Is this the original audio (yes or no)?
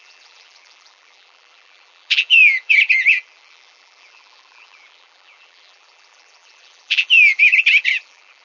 no